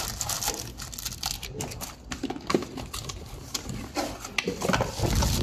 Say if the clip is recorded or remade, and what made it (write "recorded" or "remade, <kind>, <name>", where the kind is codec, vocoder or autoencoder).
recorded